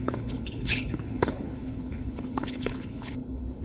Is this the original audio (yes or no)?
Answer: no